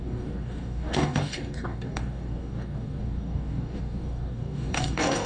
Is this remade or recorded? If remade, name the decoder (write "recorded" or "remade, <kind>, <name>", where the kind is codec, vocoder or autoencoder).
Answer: remade, codec, DAC